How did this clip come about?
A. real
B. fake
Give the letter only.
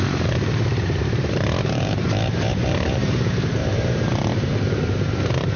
B